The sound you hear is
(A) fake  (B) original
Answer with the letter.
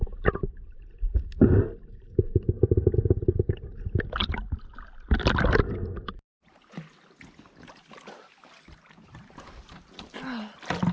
B